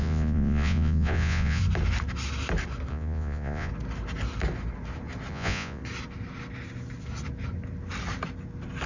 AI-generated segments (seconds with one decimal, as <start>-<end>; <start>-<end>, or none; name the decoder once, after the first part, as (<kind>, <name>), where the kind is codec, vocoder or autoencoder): 0.0-1.6 (vocoder, Vocos); 2.9-3.7; 5.3-5.8